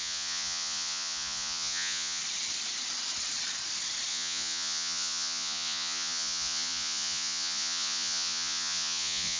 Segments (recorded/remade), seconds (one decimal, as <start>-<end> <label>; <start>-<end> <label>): 0.0-2.2 remade; 2.2-4.1 recorded; 4.1-9.4 remade